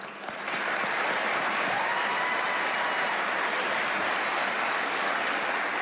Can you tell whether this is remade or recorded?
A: recorded